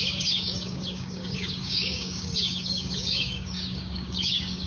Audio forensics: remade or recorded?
remade